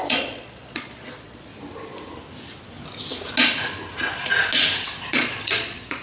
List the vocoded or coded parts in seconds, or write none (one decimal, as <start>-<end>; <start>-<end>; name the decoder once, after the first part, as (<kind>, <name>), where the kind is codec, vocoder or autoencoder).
0.0-1.5 (vocoder, Vocos); 5.1-6.0